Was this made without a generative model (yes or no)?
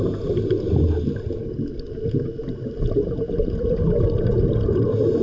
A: yes